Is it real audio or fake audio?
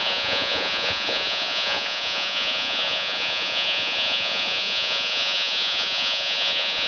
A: fake